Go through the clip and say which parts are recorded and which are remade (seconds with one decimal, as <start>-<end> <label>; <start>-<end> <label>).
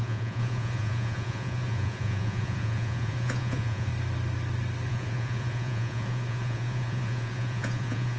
0.0-3.9 remade; 3.9-4.9 recorded; 4.9-8.2 remade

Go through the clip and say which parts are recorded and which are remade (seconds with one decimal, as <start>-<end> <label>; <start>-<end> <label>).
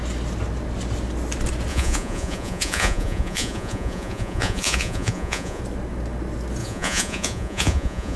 0.0-1.7 recorded; 1.7-5.6 remade; 5.6-6.6 recorded; 6.6-8.2 remade